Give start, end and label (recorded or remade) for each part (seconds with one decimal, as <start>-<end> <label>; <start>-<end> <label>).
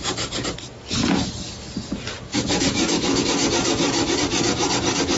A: 0.0-2.3 recorded; 2.3-3.2 remade; 3.2-5.2 recorded